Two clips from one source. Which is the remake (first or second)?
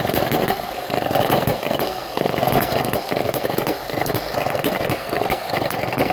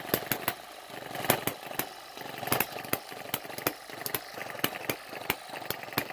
first